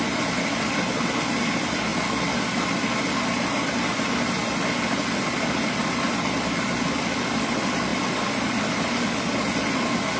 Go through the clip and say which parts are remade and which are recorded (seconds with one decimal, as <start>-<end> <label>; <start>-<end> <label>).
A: 0.0-10.2 recorded